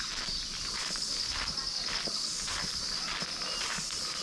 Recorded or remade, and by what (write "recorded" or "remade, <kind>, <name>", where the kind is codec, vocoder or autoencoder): recorded